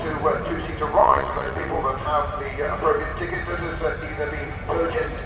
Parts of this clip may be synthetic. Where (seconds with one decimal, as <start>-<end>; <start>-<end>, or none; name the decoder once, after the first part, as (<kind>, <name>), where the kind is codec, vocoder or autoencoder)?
1.0-1.8 (vocoder, WaveNeXt)

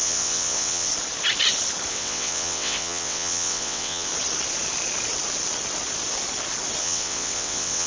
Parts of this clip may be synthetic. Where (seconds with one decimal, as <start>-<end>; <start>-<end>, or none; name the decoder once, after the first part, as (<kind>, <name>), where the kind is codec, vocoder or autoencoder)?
0.0-0.9 (vocoder, WaveNeXt); 1.9-4.1; 6.8-7.9

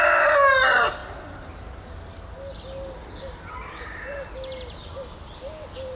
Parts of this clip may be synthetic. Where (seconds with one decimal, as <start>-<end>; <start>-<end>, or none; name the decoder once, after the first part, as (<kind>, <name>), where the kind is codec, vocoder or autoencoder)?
none

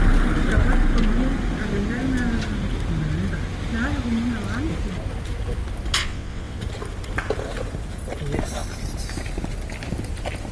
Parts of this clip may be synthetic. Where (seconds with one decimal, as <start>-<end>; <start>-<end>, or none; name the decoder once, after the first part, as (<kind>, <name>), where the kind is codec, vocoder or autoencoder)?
6.0-6.6 (vocoder, WaveNeXt)

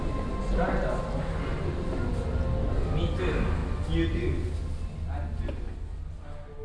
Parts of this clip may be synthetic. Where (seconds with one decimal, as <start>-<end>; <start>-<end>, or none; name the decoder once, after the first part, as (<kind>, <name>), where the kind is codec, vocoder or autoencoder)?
none

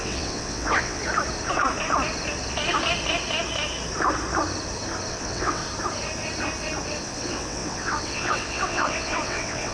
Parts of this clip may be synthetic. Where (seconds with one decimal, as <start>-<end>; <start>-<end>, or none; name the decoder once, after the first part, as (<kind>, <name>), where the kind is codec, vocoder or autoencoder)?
0.0-1.0 (vocoder, WaveNeXt); 5.1-5.6; 7.0-9.7

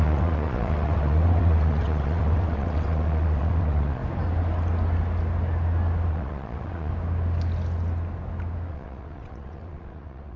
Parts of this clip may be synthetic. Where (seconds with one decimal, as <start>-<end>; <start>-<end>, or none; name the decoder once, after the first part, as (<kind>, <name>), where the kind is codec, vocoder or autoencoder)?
0.0-4.0 (vocoder, WaveNeXt); 6.1-6.9; 8.7-10.4